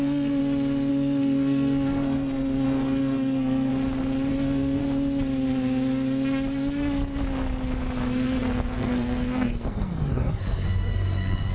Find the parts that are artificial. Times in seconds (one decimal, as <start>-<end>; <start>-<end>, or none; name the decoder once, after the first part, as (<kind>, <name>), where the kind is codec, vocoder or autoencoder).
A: 0.0-0.4 (codec, SNAC); 0.9-3.7; 4.3-4.8; 8.4-11.5